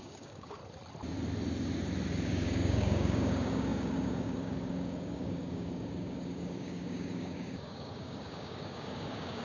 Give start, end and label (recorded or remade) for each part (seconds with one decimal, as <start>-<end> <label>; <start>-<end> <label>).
0.0-0.6 remade; 0.6-2.3 recorded; 2.3-9.4 remade